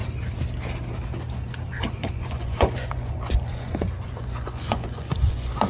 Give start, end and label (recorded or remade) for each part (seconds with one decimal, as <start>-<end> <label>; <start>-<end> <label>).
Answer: 0.0-1.7 recorded; 1.7-5.7 remade